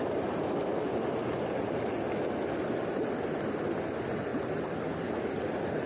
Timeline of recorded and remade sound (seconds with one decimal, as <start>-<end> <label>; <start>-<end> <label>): 0.0-5.9 recorded